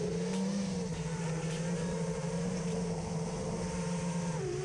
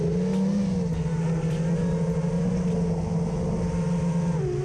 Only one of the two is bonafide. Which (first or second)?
second